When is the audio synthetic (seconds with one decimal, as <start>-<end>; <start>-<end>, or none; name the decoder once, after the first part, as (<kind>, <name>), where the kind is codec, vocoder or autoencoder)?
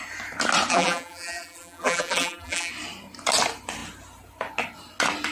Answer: 0.7-2.7 (vocoder, BigVGAN v2)